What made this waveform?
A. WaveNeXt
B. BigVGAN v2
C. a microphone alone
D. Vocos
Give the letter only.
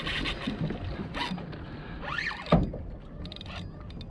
C